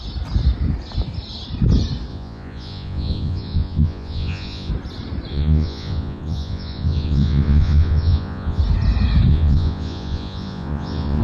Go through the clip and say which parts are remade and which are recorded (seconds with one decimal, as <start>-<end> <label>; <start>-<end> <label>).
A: 0.0-2.1 recorded; 2.1-4.7 remade; 4.7-5.3 recorded; 5.3-8.6 remade; 8.6-9.3 recorded; 9.3-11.2 remade